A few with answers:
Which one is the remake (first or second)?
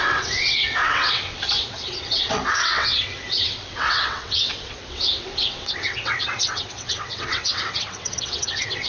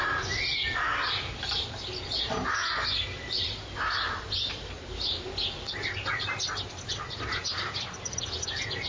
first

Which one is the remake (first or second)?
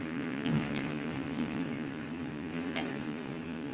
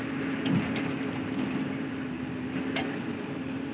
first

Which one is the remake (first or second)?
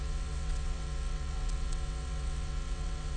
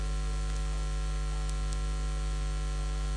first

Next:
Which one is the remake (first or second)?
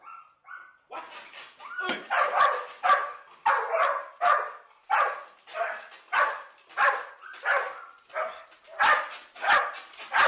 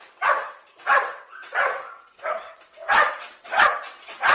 second